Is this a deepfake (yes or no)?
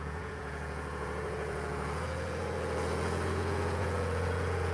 yes